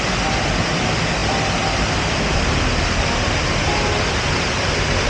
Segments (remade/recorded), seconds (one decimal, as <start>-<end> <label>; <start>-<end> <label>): 0.0-5.1 recorded